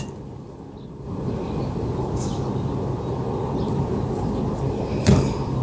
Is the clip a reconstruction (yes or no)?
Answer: no